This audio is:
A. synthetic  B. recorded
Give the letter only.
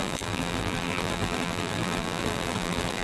A